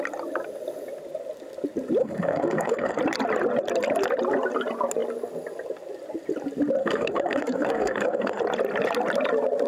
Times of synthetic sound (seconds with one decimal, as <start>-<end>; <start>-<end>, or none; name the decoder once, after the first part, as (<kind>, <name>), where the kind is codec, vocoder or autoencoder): 2.0-3.0 (codec, SNAC); 6.8-8.4